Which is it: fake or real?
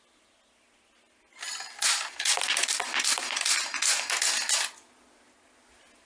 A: real